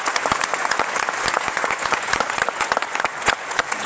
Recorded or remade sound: remade